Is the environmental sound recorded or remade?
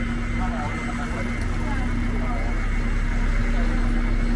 recorded